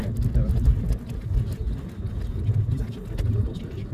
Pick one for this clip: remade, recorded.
recorded